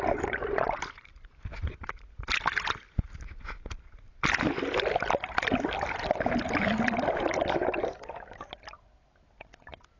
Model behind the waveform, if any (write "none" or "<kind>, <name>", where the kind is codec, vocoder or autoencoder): none